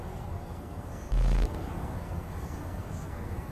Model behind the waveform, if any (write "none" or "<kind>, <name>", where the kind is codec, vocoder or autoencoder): codec, SNAC